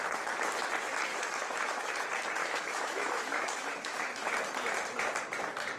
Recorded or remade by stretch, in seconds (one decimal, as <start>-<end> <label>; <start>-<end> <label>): 0.0-1.1 recorded; 1.1-1.9 remade; 1.9-2.4 recorded; 2.4-4.3 remade; 4.3-5.8 recorded